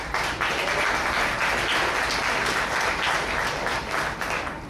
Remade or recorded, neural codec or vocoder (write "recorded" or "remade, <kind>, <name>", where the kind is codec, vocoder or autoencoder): recorded